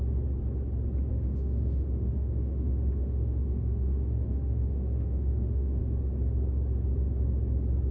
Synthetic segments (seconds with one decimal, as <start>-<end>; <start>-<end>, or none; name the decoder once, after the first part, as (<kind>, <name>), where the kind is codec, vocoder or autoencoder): 1.1-5.8 (autoencoder, DAC-VAE)